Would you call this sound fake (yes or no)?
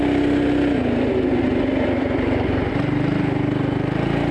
no